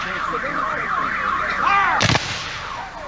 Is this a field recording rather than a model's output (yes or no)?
no